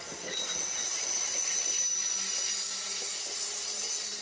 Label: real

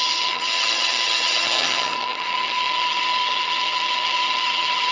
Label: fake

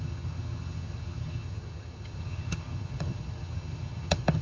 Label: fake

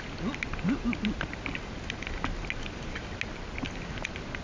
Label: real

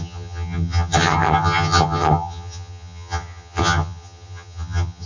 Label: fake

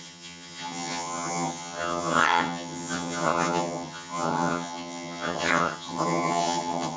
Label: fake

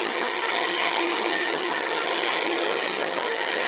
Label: fake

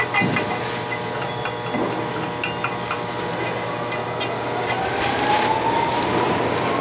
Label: real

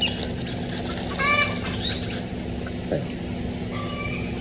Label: real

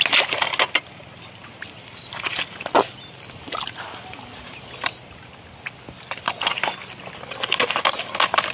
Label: real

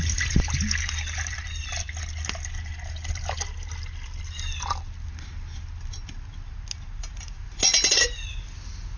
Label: real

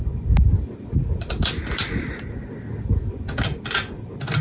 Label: real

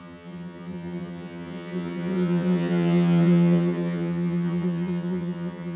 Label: fake